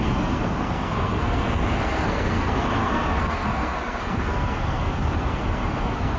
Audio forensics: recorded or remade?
remade